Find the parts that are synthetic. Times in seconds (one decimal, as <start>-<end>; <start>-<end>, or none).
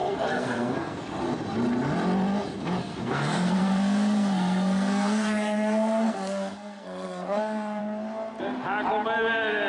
0.0-1.0; 2.8-7.8